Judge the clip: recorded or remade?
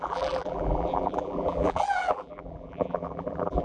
remade